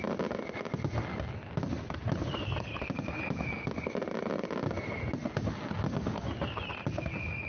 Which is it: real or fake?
real